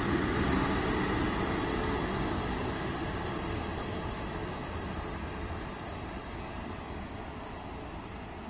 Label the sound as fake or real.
real